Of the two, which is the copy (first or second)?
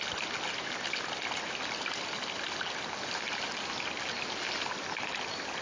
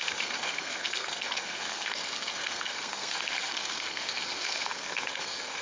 second